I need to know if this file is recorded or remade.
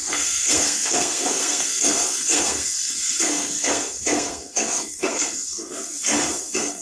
remade